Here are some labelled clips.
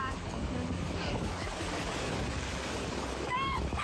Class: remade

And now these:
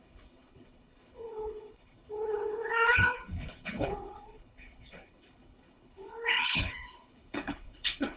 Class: remade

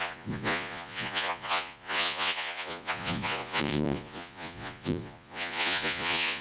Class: remade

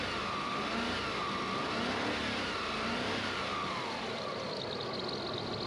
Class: recorded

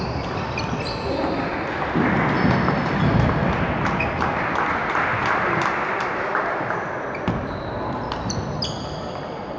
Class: recorded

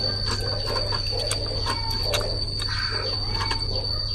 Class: recorded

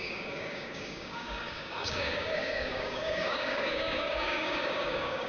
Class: remade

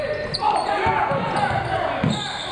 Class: recorded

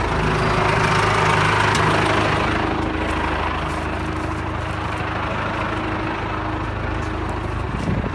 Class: recorded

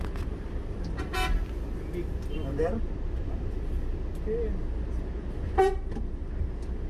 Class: recorded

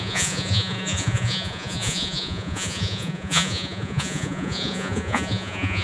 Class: remade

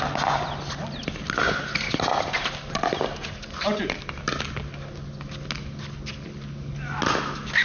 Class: recorded